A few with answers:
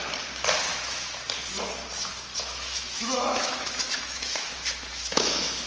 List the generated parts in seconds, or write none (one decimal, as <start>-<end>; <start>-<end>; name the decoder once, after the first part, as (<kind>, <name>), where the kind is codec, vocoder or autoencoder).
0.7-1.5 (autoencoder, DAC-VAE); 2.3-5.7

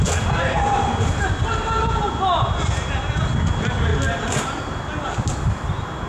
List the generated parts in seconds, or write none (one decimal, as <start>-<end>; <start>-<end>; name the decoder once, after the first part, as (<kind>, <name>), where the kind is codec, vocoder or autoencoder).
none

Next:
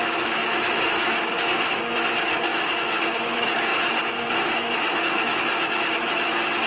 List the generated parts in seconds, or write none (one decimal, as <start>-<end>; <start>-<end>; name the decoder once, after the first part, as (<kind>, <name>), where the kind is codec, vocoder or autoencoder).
0.0-6.7 (autoencoder, DAC-VAE)

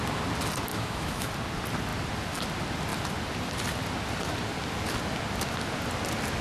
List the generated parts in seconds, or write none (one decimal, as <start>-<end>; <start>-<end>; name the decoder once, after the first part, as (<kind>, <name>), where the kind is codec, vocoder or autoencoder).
0.7-1.3 (autoencoder, DAC-VAE)

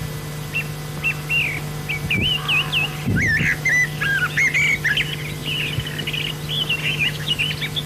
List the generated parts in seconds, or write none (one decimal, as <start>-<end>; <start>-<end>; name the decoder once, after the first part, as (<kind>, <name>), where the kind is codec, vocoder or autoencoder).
6.8-7.4 (autoencoder, DAC-VAE)

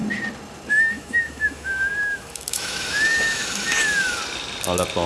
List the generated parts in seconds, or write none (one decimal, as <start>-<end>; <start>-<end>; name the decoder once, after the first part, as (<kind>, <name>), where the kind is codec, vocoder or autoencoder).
0.7-4.2 (autoencoder, DAC-VAE)

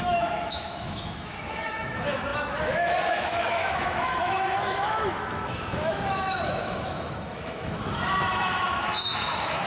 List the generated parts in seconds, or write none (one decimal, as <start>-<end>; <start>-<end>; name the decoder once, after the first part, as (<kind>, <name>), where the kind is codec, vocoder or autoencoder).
0.0-9.7 (autoencoder, DAC-VAE)